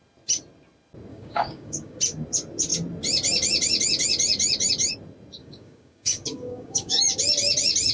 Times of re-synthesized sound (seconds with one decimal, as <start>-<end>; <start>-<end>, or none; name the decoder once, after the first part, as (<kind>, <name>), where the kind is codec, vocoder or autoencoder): 1.1-2.0 (codec, DAC); 5.4-7.0

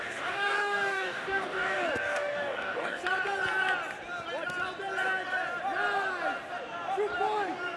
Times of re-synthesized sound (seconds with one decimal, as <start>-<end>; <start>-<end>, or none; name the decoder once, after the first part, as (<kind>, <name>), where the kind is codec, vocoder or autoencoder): 0.0-3.0 (codec, DAC)